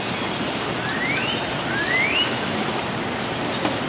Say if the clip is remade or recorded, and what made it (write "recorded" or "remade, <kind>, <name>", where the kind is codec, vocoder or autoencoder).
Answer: recorded